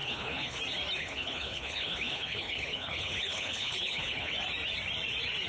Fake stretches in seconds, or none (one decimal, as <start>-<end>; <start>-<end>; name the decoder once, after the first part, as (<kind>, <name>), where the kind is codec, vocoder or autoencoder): 0.0-0.6 (codec, HILCodec); 1.0-4.3